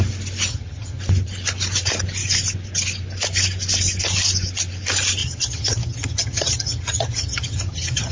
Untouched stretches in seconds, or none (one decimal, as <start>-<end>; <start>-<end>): 0.0-0.5; 1.0-5.2